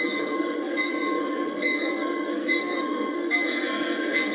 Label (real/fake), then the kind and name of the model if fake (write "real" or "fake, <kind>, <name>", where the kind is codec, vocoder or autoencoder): fake, codec, SNAC